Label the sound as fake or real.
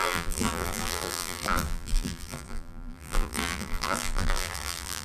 fake